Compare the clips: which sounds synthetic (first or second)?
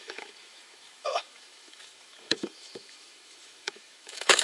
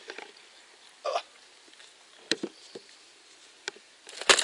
first